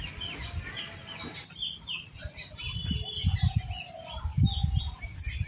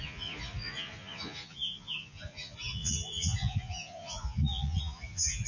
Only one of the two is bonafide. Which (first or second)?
first